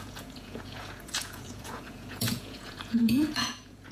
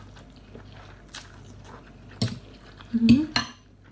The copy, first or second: first